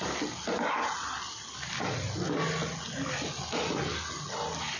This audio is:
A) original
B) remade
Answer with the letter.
A